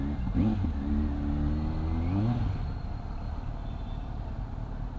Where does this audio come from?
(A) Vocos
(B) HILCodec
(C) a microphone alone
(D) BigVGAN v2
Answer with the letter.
C